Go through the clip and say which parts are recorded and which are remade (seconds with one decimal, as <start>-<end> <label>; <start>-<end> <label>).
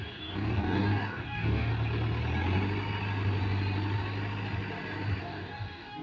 0.0-1.7 remade; 1.7-5.2 recorded; 5.2-6.0 remade